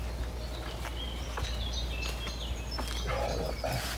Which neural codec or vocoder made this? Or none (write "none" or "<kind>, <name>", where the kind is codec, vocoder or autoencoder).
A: none